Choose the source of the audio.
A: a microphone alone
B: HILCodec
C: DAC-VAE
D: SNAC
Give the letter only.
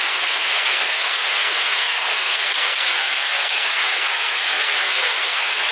D